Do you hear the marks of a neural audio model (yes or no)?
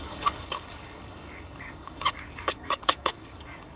yes